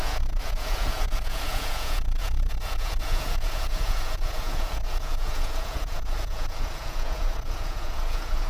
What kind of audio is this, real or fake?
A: fake